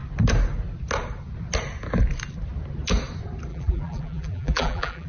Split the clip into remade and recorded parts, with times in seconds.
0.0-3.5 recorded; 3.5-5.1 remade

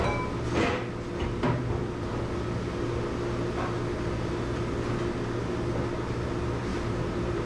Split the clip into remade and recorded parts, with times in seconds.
0.0-6.7 recorded; 6.7-7.5 remade

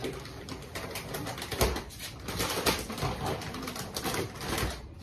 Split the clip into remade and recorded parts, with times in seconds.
0.0-5.0 recorded